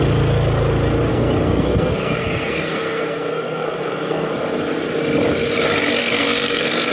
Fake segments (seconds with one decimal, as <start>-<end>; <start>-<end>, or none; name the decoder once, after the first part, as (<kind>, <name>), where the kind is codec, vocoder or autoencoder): 1.1-4.3 (codec, SNAC); 6.0-6.9